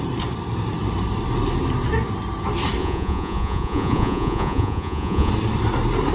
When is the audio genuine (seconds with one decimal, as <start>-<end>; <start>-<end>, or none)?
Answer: 0.0-2.8; 5.3-6.1